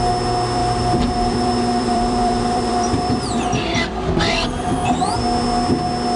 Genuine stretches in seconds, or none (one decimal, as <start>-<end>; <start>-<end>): 0.0-0.6; 4.0-6.2